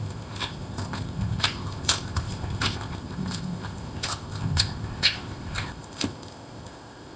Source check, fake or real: fake